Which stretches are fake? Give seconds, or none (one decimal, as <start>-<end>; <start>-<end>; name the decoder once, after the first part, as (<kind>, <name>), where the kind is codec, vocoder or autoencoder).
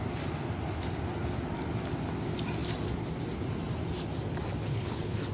4.7-5.3 (codec, HILCodec)